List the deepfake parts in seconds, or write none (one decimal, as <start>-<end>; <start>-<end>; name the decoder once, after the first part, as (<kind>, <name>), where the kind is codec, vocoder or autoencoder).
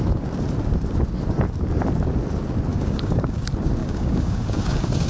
2.7-3.4 (codec, DAC); 3.8-5.1